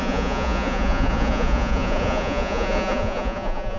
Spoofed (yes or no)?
yes